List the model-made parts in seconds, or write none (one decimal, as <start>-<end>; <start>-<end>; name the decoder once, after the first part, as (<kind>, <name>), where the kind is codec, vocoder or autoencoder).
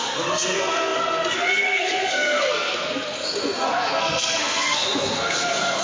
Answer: 0.0-5.8 (codec, SNAC)